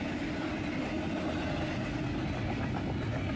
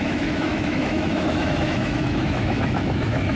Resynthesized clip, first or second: second